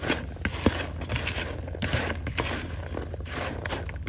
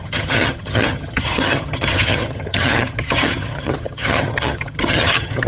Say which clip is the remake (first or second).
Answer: second